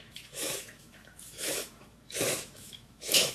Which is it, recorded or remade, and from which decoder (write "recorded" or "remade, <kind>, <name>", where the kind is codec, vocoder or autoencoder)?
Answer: remade, autoencoder, DAC-VAE